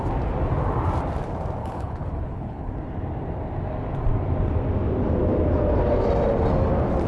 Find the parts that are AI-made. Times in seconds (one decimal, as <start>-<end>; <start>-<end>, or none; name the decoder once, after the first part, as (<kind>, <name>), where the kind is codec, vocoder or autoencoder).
1.6-2.7 (codec, HILCodec)